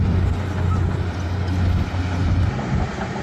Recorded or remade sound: recorded